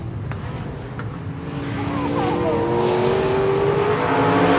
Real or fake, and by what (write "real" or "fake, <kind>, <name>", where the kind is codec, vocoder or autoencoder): real